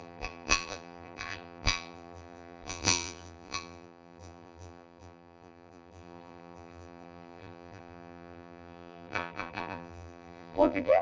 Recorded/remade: remade